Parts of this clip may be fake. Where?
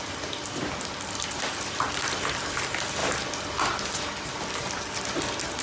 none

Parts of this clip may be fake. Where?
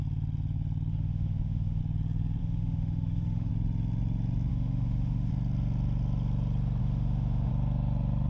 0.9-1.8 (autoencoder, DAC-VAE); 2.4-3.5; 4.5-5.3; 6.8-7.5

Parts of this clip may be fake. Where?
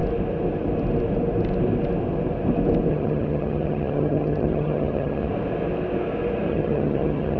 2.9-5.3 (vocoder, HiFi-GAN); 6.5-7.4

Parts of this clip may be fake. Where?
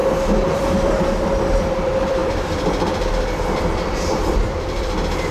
0.0-5.3 (vocoder, BigVGAN v2)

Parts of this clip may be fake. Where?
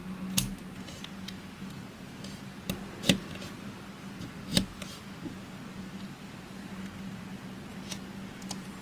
none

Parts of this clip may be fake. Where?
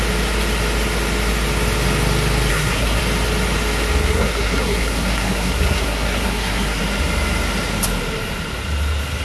2.5-3.0 (codec, SNAC); 4.0-6.8